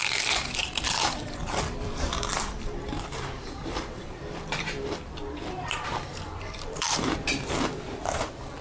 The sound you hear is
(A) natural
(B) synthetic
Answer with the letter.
B